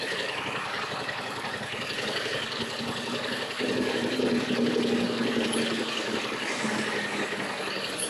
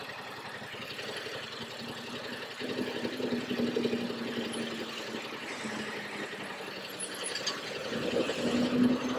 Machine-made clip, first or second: first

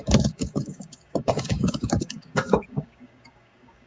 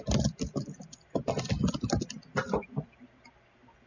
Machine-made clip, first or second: first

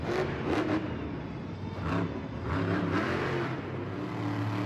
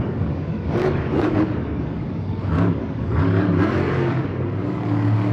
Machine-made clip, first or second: second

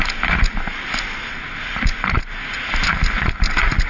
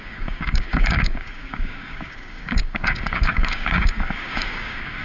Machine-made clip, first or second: second